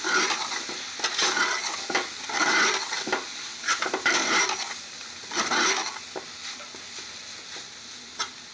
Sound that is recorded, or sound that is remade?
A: recorded